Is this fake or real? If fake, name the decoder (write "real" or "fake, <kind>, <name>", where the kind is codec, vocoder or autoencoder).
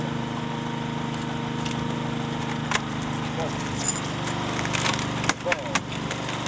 real